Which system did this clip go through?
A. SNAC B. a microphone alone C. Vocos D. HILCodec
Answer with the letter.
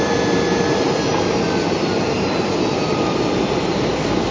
B